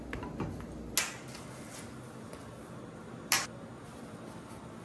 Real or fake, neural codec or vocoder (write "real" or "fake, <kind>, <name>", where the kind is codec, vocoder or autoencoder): real